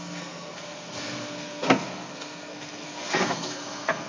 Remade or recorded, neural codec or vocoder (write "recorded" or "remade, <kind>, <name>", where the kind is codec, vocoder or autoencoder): remade, codec, SNAC